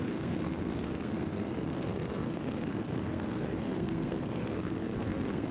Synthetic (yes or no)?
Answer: yes